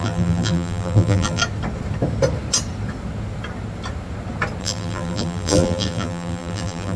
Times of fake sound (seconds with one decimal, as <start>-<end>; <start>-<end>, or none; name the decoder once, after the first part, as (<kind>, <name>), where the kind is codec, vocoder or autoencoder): 0.0-1.4 (vocoder, BigVGAN v2); 4.6-7.0